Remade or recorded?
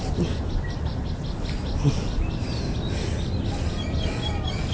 recorded